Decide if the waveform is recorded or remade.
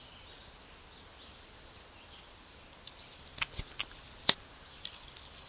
recorded